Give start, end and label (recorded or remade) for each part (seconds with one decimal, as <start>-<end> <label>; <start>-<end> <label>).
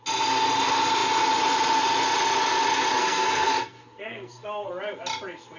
0.0-3.0 recorded; 3.0-4.7 remade; 4.7-5.6 recorded